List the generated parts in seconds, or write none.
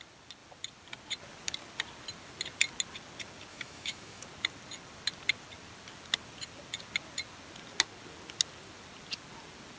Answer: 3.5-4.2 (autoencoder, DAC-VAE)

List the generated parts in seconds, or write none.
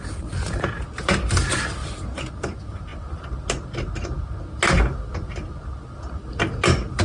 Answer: none